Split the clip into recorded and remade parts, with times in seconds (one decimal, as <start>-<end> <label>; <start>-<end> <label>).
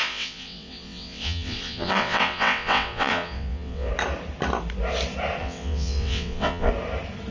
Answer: 0.0-3.9 remade; 3.9-5.4 recorded; 5.4-6.7 remade; 6.7-7.3 recorded